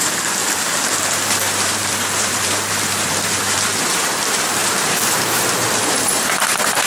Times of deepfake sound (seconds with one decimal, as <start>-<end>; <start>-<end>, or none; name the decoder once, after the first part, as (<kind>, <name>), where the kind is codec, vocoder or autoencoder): 0.0-0.4 (vocoder, BigVGAN v2); 1.1-6.9